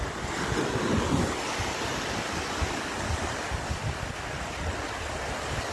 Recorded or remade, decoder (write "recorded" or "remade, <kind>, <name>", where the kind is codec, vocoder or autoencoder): recorded